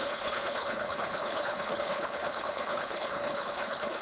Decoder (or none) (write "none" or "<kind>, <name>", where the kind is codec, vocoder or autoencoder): codec, HILCodec